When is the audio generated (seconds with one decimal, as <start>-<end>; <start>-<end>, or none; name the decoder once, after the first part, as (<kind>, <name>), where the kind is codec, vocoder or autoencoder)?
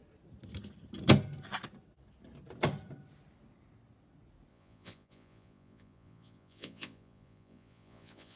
4.5-8.4 (vocoder, Vocos)